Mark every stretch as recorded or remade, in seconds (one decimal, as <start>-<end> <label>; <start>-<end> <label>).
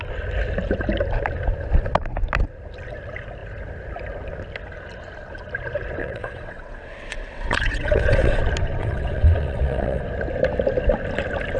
0.0-6.0 recorded; 6.0-8.4 remade; 8.4-8.8 recorded; 8.8-10.0 remade; 10.0-11.6 recorded